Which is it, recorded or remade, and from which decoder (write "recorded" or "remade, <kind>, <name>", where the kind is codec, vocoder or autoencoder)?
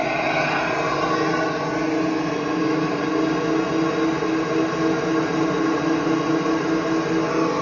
recorded